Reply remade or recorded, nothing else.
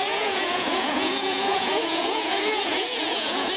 remade